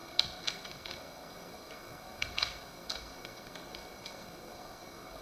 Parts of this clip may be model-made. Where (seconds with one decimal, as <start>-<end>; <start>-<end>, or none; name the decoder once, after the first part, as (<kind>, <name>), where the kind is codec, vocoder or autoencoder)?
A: 0.0-5.2 (codec, SNAC)